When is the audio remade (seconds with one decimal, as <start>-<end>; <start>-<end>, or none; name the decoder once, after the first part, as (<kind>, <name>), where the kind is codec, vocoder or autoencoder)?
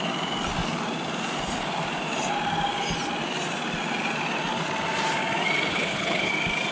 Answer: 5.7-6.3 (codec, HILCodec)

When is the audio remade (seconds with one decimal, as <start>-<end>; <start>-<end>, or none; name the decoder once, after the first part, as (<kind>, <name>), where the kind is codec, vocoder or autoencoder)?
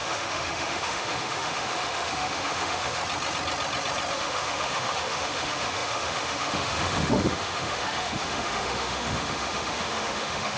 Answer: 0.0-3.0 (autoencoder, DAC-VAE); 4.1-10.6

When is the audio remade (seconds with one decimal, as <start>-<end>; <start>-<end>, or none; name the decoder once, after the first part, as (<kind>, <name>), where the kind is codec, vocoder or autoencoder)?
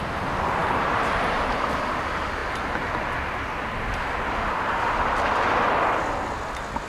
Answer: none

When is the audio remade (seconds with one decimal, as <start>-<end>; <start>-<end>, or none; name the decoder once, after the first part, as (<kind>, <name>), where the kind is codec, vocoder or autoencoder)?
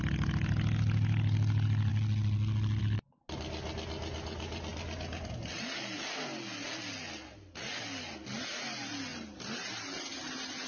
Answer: none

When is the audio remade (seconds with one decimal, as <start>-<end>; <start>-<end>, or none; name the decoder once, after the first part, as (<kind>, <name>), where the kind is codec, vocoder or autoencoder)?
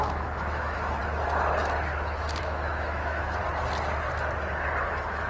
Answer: 0.0-1.0 (autoencoder, DAC-VAE); 2.4-3.4; 4.8-5.3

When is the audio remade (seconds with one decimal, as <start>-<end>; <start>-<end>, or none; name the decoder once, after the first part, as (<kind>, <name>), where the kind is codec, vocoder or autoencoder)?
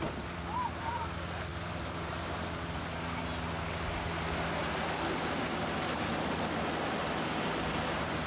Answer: none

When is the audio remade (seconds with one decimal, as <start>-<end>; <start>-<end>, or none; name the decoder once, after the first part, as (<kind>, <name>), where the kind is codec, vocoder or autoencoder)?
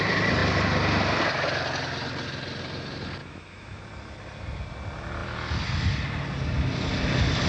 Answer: 3.2-3.8 (autoencoder, DAC-VAE)